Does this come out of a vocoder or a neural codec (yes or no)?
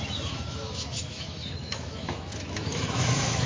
yes